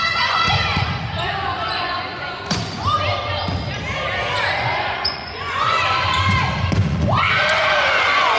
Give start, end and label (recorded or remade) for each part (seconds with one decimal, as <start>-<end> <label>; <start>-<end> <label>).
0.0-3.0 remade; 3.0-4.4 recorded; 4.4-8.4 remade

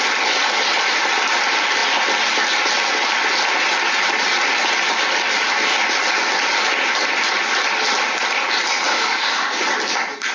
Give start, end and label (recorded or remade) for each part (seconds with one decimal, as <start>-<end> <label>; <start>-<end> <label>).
0.0-8.9 recorded; 8.9-9.6 remade; 9.6-10.3 recorded

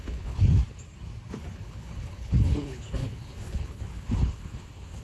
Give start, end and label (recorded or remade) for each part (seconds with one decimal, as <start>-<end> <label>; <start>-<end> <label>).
0.0-0.6 remade; 0.6-1.3 recorded; 1.3-5.0 remade

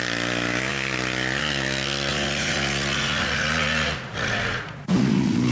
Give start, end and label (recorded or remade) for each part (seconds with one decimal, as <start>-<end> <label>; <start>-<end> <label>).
0.0-2.1 recorded; 2.1-5.5 remade

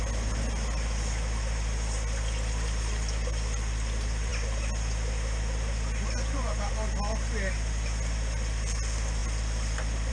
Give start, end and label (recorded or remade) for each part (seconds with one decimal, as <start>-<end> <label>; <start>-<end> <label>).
0.0-10.1 recorded

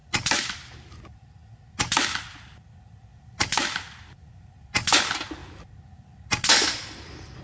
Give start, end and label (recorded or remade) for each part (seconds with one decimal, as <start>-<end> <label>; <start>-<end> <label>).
0.0-1.0 remade; 1.0-3.1 recorded; 3.1-4.3 remade; 4.3-7.4 recorded

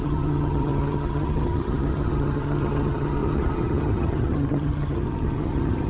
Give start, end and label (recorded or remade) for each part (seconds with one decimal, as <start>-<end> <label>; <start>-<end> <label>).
0.0-5.9 remade

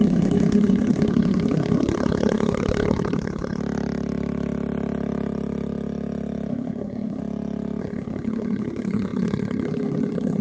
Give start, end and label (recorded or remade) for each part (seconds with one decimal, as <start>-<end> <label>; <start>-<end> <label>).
0.0-3.6 remade; 3.6-6.5 recorded; 6.5-7.2 remade; 7.2-7.8 recorded; 7.8-10.4 remade